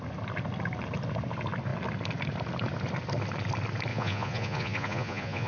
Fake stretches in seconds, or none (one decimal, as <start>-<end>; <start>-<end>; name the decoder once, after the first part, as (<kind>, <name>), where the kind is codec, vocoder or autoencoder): 3.9-5.5 (vocoder, Vocos)